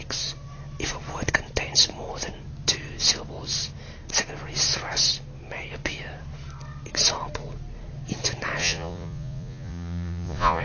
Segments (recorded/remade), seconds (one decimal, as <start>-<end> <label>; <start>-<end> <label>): 0.0-8.6 recorded; 8.6-10.6 remade